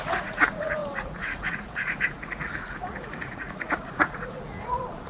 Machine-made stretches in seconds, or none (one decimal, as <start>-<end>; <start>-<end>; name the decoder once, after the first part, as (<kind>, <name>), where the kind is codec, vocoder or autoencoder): 0.0-5.1 (vocoder, Vocos)